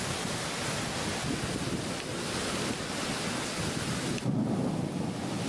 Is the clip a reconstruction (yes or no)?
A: no